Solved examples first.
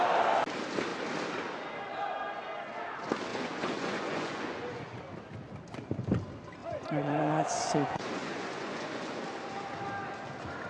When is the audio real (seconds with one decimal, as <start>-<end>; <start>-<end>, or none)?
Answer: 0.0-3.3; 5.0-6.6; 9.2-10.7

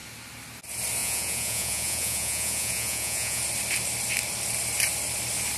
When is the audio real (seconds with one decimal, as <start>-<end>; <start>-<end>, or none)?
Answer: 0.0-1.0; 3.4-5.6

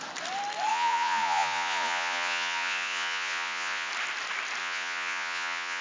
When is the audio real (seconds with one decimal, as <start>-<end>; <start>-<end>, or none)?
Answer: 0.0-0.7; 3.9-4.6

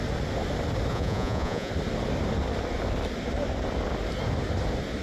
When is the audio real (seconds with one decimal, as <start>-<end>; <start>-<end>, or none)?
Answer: 0.0-0.9; 1.7-5.0

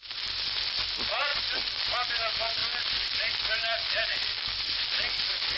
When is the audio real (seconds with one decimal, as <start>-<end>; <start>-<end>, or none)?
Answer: 0.0-5.6

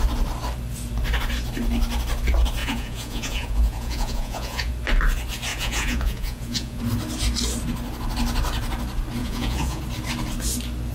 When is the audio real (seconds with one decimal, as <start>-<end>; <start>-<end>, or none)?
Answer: 0.0-2.6; 4.7-5.5; 6.8-9.2; 9.8-10.9